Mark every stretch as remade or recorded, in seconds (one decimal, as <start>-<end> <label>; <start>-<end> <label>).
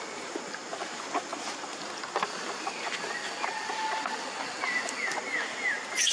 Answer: 0.0-6.1 recorded